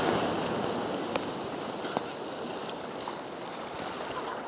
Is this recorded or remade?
recorded